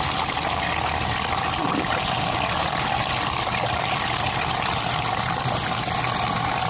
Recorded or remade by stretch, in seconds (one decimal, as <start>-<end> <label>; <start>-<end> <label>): 0.0-6.7 recorded